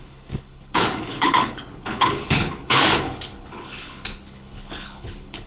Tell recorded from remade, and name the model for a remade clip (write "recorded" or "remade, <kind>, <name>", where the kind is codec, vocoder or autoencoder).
remade, codec, HILCodec